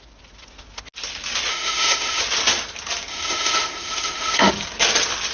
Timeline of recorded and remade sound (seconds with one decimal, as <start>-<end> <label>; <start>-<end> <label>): 0.0-1.5 recorded; 1.5-2.2 remade; 2.2-3.1 recorded; 3.1-4.5 remade; 4.5-5.3 recorded